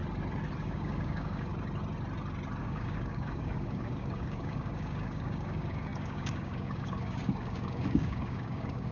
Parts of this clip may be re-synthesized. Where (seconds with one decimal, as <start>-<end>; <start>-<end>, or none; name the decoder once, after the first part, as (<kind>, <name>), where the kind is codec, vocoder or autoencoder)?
0.6-1.5 (codec, DAC); 2.6-8.9